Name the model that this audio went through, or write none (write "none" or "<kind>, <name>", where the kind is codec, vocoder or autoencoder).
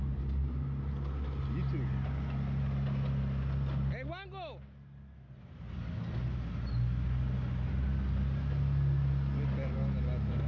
none